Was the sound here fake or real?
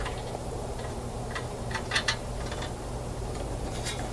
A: fake